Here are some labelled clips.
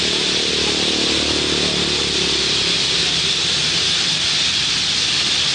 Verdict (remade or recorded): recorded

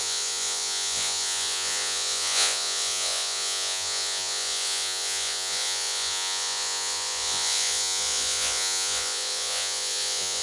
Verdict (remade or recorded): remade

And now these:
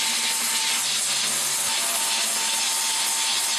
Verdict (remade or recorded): recorded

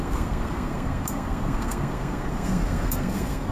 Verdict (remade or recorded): remade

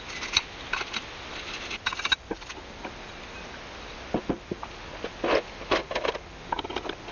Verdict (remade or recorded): recorded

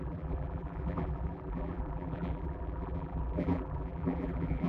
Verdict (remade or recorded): remade